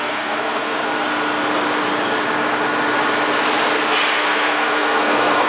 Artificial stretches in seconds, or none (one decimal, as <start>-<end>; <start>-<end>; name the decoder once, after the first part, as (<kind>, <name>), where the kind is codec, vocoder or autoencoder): 0.0-0.8 (codec, SNAC); 4.1-5.5